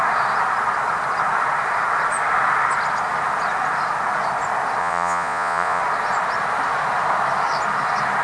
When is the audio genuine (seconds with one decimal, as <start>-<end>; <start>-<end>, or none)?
0.0-4.8; 5.8-8.2

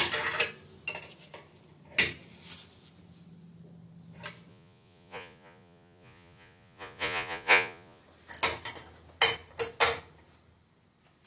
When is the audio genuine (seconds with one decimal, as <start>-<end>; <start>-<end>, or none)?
0.0-4.5; 8.0-11.3

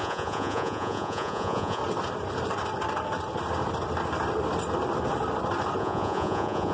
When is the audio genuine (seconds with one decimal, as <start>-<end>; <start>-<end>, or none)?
1.8-5.8